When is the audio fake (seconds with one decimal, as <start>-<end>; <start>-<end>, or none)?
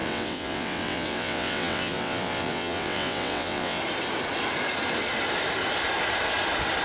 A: 0.0-3.8